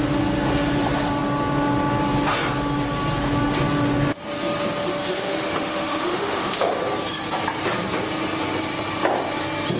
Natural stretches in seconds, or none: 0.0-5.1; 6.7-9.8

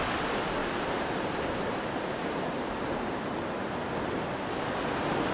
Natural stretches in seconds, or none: 0.0-0.6; 3.0-5.3